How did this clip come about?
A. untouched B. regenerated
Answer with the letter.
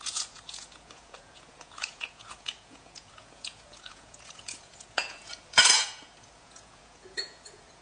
B